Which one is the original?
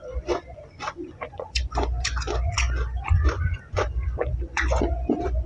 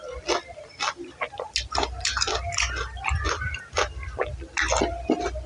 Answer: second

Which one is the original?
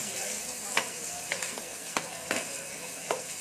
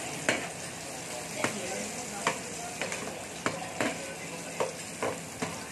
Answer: second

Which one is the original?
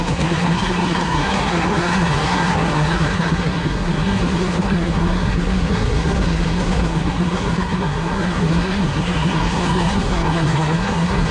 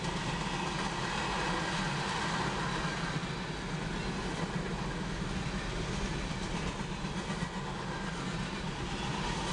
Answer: second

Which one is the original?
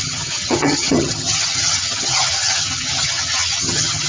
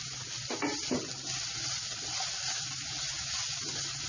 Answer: second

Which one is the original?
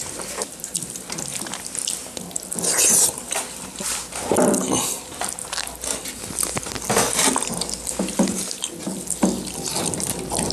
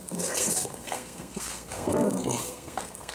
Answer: first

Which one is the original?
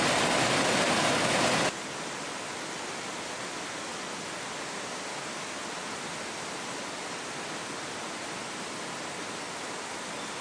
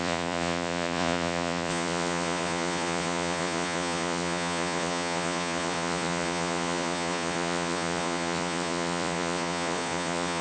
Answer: first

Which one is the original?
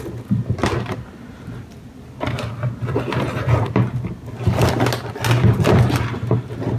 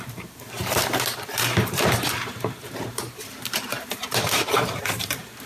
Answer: first